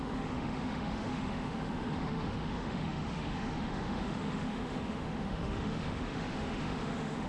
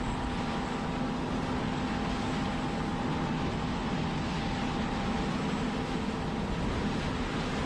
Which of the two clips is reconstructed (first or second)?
first